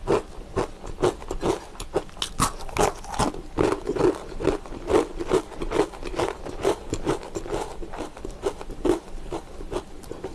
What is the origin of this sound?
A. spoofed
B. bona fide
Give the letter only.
B